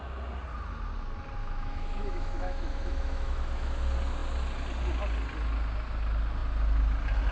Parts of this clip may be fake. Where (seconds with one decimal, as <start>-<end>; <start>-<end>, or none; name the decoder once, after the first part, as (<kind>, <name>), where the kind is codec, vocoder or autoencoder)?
1.4-3.8 (autoencoder, DAC-VAE)